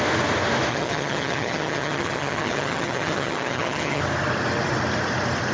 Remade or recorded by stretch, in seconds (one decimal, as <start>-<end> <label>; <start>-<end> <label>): 0.0-0.7 recorded; 0.7-4.0 remade; 4.0-5.5 recorded